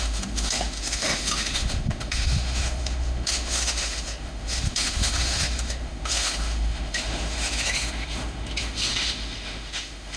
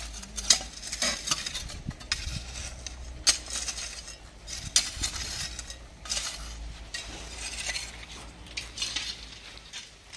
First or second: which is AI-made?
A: first